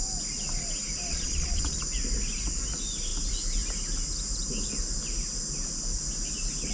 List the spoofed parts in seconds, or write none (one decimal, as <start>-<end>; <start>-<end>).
1.1-1.8